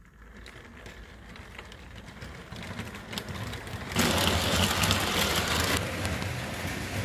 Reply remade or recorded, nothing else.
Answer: recorded